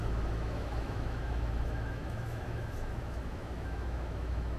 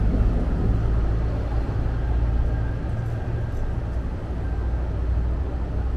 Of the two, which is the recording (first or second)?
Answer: second